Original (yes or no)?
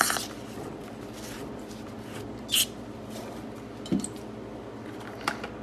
yes